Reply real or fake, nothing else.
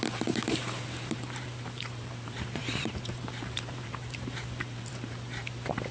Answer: fake